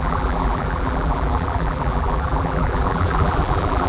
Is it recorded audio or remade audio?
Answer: remade